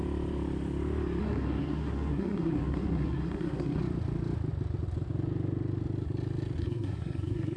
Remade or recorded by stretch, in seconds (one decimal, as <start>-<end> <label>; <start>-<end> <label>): 0.0-1.2 recorded; 1.2-3.8 remade; 3.8-6.6 recorded; 6.6-7.6 remade